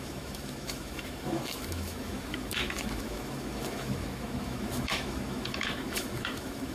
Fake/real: fake